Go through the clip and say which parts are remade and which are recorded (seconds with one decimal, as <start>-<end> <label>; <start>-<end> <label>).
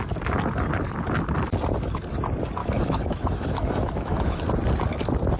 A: 0.0-2.6 recorded; 2.6-4.4 remade; 4.4-5.4 recorded